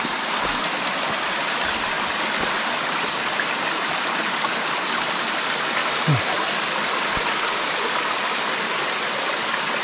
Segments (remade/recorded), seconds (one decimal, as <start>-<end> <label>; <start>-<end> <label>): 0.0-9.8 recorded